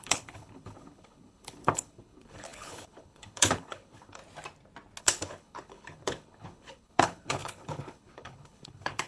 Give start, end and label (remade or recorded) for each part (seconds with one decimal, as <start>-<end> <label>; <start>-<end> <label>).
0.0-4.2 remade; 4.2-5.0 recorded; 5.0-9.1 remade

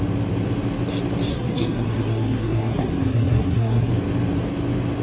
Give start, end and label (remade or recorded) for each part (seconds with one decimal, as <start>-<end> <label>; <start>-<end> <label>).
0.0-1.3 recorded; 1.3-3.9 remade; 3.9-5.0 recorded

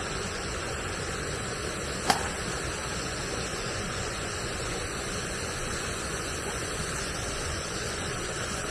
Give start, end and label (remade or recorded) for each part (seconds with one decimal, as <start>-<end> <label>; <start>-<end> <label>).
0.0-1.6 remade; 1.6-3.0 recorded; 3.0-8.7 remade

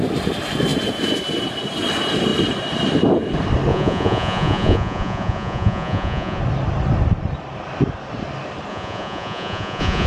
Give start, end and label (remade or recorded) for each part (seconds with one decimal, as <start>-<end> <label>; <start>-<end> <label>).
0.0-3.7 recorded; 3.7-6.4 remade; 6.4-8.7 recorded; 8.7-10.1 remade

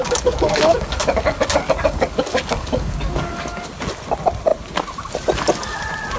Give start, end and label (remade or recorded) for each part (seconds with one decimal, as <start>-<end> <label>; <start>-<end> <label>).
0.0-3.7 remade; 3.7-6.2 recorded

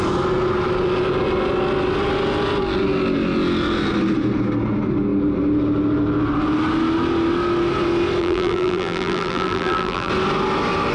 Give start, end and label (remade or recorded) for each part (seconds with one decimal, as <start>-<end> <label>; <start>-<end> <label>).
0.0-8.2 recorded; 8.2-10.1 remade; 10.1-10.9 recorded